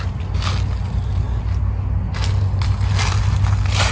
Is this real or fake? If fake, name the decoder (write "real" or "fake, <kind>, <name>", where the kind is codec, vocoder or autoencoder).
real